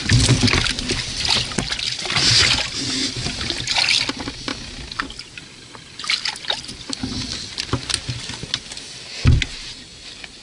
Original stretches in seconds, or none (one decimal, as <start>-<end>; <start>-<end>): 0.0-1.1; 1.7-10.4